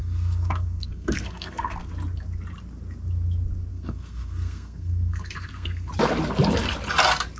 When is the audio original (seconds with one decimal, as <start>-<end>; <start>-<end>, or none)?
1.9-3.7; 5.9-7.4